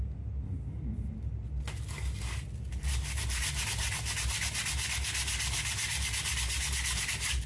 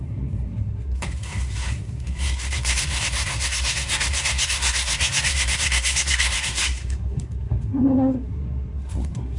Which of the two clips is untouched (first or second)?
first